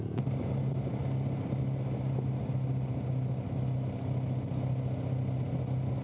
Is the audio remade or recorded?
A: recorded